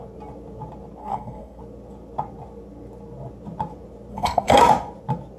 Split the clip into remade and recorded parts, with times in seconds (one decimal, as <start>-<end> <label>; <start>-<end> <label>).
0.0-1.0 recorded; 1.0-1.6 remade; 1.6-4.1 recorded; 4.1-4.6 remade; 4.6-5.4 recorded